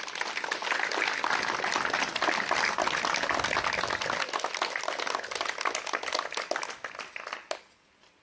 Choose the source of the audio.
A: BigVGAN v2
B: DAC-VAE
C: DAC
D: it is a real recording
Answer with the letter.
D